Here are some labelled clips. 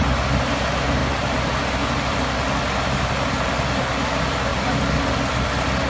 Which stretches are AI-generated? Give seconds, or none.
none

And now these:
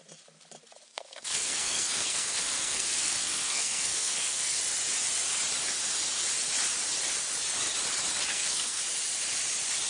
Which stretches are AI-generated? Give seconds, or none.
0.9-4.6 (codec, SNAC); 8.3-8.8

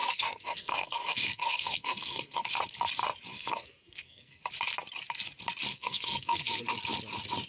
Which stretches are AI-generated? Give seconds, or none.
0.0-2.5 (codec, SNAC); 3.3-4.4; 5.7-6.6

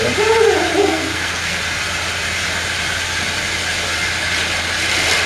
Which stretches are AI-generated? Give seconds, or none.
0.8-1.6 (codec, SNAC)